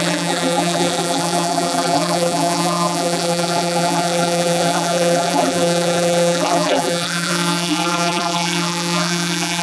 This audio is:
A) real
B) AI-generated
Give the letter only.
B